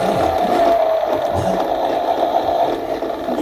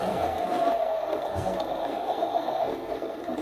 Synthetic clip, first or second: second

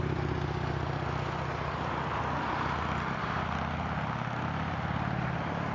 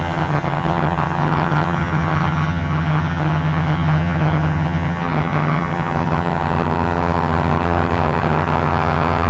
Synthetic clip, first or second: second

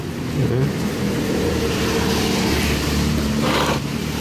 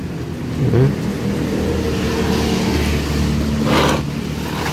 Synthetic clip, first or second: first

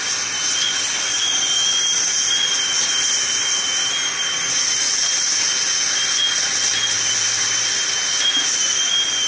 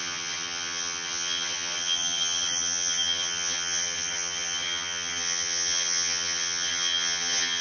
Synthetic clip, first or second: second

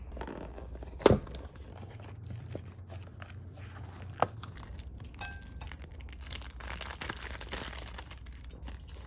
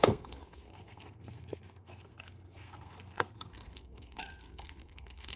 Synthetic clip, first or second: second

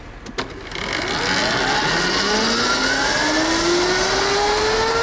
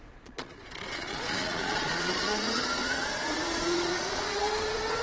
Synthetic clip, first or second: second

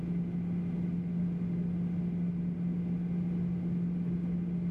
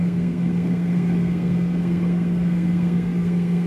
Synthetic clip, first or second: second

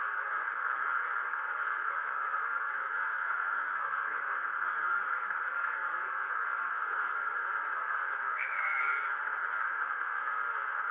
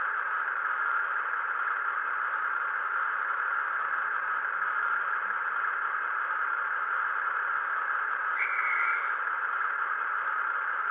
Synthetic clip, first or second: first